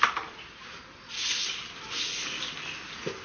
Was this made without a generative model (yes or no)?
yes